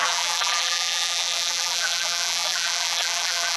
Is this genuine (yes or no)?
no